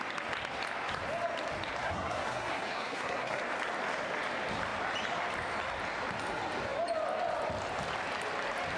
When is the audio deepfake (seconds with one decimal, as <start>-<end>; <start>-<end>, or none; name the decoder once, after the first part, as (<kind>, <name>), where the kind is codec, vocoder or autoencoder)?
1.8-3.4 (codec, SNAC)